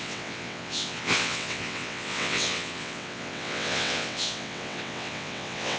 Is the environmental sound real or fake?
fake